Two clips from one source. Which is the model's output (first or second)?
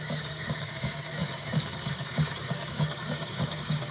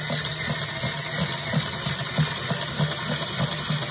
first